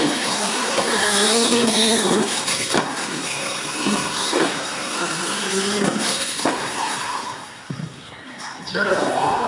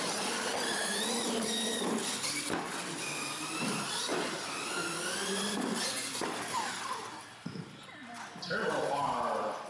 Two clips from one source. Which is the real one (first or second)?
second